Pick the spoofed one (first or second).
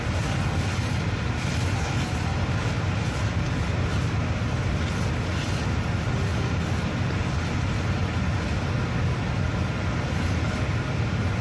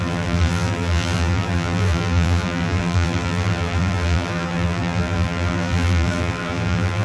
second